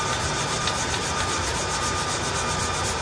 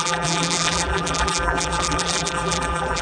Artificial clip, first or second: second